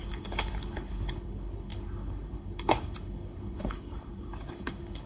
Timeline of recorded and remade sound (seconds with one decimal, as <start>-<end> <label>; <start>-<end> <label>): 0.0-5.1 remade